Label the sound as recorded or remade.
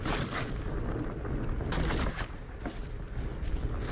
recorded